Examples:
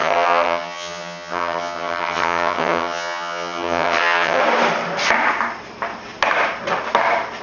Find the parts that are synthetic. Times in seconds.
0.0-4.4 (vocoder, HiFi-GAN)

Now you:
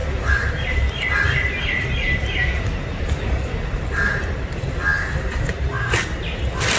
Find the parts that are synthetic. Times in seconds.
none

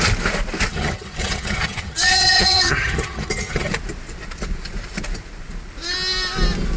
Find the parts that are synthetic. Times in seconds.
0.7-3.7 (vocoder, HiFi-GAN)

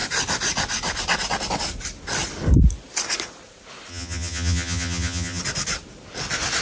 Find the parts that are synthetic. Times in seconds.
3.9-5.4 (vocoder, HiFi-GAN)

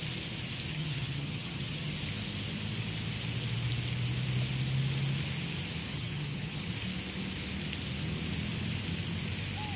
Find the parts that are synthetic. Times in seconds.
0.7-1.9 (vocoder, HiFi-GAN); 5.9-6.7

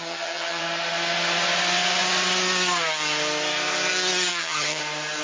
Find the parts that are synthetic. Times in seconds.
0.0-0.6 (vocoder, HiFi-GAN); 4.3-4.8